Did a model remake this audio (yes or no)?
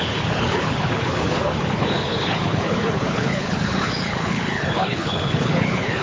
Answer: yes